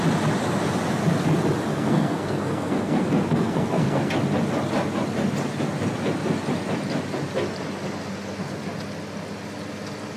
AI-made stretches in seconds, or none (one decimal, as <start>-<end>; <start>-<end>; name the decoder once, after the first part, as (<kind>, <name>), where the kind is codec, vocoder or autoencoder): 1.7-4.1 (codec, SNAC)